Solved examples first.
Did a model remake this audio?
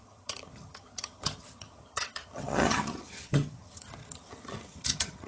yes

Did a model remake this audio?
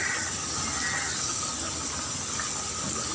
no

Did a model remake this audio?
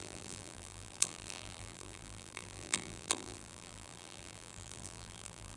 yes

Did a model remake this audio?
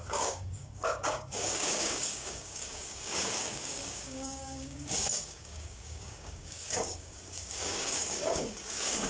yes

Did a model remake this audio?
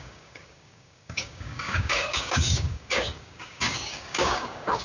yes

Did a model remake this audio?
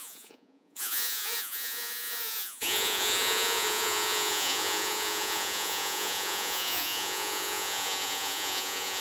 yes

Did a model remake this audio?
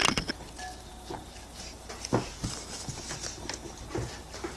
no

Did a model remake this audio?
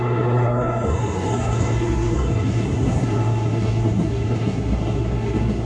yes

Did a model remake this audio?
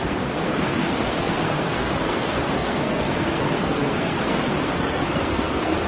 yes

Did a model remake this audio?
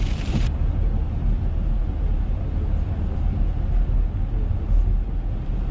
no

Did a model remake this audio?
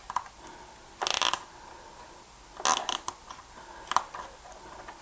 no